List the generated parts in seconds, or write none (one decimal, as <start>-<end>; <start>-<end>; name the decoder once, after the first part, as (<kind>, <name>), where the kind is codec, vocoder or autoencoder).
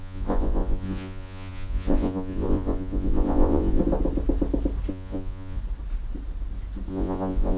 0.0-3.8 (vocoder, Vocos); 4.9-5.6; 6.9-7.6